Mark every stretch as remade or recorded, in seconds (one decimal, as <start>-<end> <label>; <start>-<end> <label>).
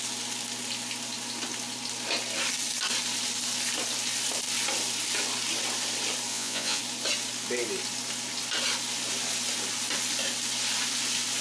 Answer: 0.0-6.3 recorded; 6.3-6.8 remade; 6.8-11.4 recorded